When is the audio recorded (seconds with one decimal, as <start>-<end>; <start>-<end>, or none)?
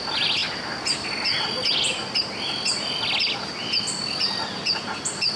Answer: 0.0-5.4